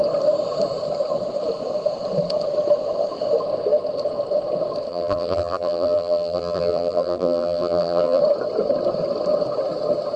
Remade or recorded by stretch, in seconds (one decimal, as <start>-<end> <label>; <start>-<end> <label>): 0.0-4.9 recorded; 4.9-8.2 remade; 8.2-10.2 recorded